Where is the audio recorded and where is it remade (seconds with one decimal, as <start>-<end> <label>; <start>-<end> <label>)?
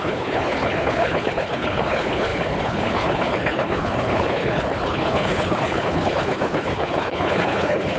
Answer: 0.0-8.0 remade